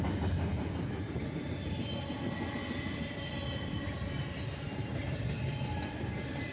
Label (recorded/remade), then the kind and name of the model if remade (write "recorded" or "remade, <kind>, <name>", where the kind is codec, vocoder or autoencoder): recorded